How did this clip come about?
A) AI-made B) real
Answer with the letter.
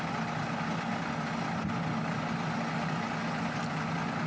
B